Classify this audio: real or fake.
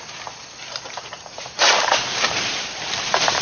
fake